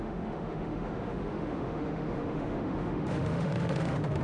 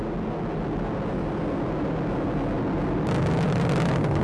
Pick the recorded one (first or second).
second